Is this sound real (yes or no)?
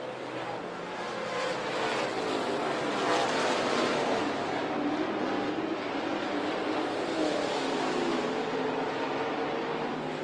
yes